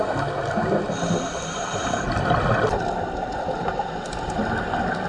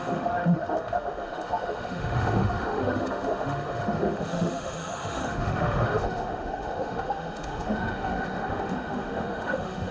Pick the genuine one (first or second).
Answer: first